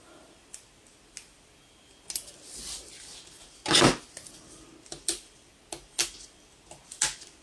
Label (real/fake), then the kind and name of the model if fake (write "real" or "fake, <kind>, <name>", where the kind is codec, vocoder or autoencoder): real